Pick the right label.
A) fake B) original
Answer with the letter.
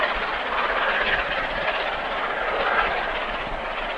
B